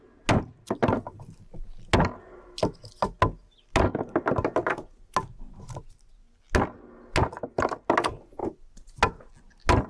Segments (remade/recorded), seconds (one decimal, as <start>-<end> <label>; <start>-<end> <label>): 0.0-8.4 recorded; 8.4-8.9 remade; 8.9-9.9 recorded

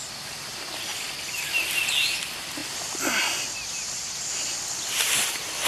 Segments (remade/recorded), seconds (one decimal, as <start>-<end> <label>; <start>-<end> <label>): 0.0-5.7 recorded

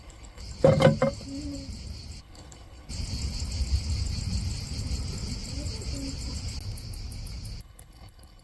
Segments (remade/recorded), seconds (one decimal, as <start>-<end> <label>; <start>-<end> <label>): 0.0-0.4 remade; 0.4-2.2 recorded; 2.2-2.9 remade; 2.9-7.6 recorded; 7.6-8.4 remade